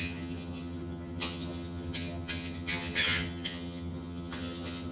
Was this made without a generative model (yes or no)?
no